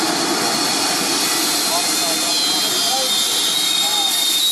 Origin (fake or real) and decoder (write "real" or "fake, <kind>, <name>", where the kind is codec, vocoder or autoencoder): real